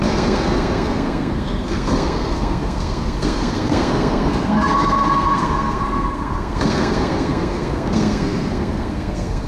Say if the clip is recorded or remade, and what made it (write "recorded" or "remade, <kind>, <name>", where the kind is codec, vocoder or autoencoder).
remade, codec, SNAC